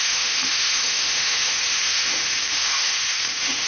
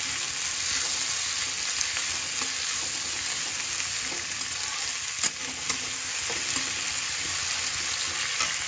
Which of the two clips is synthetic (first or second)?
first